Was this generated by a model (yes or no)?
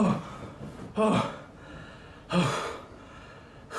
no